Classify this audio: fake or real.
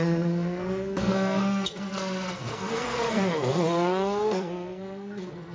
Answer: fake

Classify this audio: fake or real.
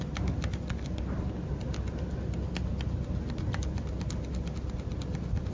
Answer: real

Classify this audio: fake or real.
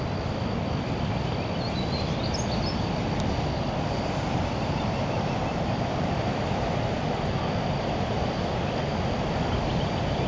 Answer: real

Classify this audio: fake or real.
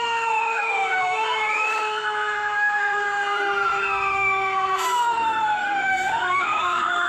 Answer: fake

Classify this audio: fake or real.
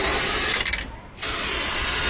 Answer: real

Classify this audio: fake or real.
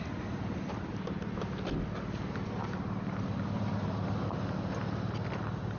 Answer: real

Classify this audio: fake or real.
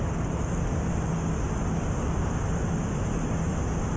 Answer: real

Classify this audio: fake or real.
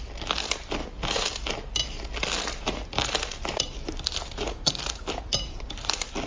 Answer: real